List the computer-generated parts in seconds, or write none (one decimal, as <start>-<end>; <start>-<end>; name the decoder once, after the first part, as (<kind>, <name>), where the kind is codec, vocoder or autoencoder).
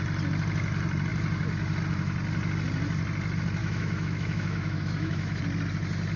3.6-5.4 (autoencoder, DAC-VAE)